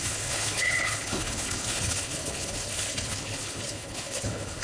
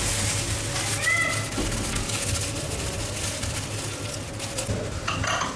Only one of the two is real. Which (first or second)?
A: second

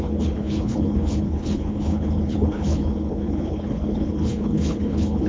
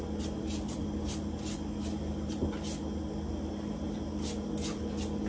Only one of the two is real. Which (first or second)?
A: second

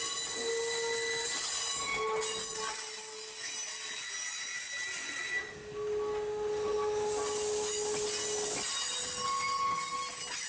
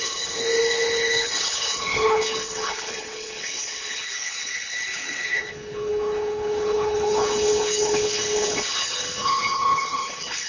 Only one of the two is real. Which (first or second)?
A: first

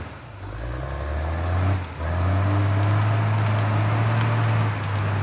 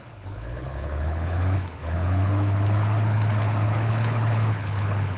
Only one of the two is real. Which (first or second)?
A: first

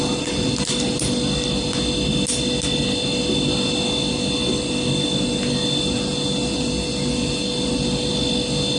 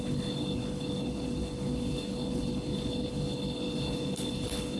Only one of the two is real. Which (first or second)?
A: first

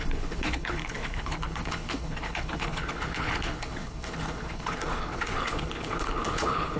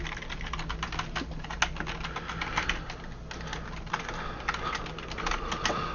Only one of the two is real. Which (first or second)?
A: second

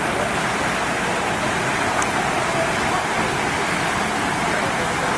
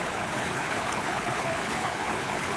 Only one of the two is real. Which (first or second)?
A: first